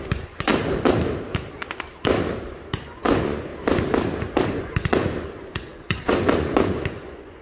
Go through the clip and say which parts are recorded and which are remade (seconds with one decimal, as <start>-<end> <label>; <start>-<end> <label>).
0.0-0.5 remade; 0.5-2.5 recorded; 2.5-3.5 remade; 3.5-4.5 recorded; 4.5-7.4 remade